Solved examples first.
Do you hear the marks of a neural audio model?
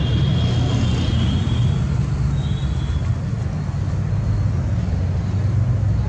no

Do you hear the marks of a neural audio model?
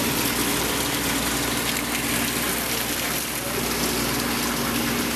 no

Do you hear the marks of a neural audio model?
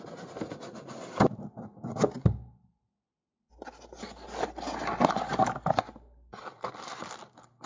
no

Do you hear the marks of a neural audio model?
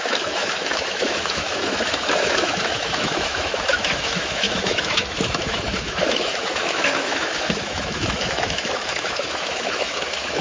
yes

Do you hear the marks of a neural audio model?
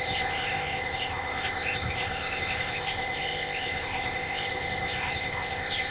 yes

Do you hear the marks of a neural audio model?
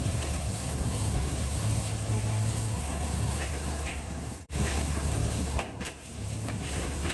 yes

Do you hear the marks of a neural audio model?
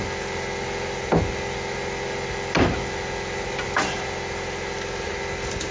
no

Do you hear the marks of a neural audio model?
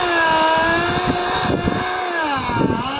no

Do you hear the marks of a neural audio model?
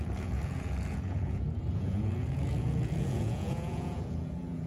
yes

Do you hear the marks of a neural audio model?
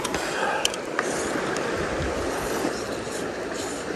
no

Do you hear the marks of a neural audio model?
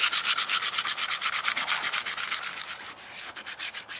no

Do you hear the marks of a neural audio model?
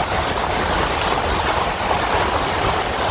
no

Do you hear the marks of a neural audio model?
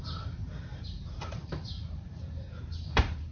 yes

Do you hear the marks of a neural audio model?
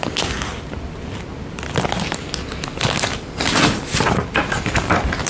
no